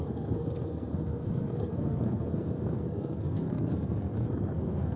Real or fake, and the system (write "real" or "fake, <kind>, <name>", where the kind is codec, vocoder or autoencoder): fake, codec, SNAC